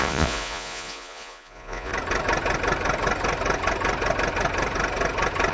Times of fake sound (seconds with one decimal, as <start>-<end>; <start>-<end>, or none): 0.0-1.9